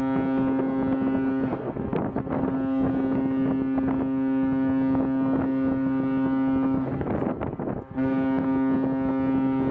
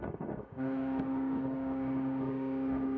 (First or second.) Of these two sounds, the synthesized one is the second